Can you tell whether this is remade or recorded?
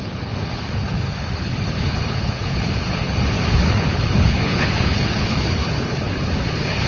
remade